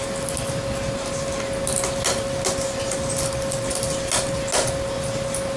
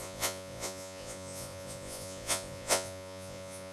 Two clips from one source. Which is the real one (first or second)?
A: first